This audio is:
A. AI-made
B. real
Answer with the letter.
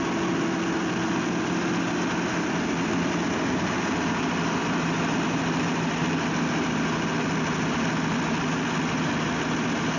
B